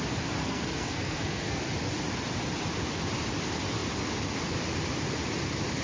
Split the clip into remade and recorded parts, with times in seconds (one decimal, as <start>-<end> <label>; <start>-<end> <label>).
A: 0.0-0.4 recorded; 0.4-1.6 remade; 1.6-5.8 recorded